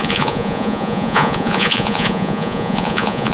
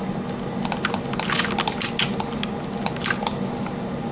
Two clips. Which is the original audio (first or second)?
second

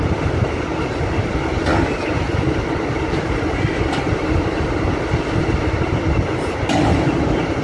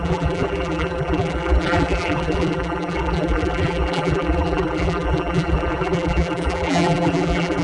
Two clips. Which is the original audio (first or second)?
first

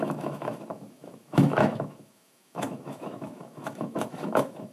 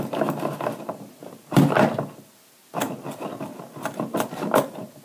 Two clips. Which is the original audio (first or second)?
second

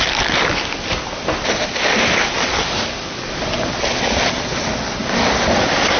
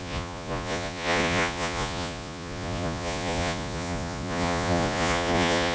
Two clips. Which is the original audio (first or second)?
first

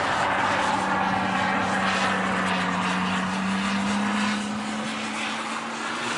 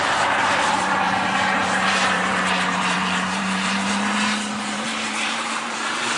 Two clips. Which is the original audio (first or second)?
first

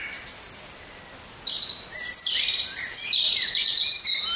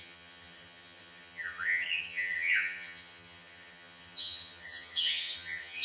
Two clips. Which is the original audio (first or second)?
first